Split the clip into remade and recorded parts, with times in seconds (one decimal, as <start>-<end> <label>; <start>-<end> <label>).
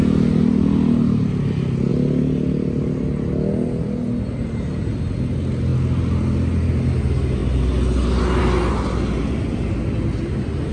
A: 0.0-10.7 recorded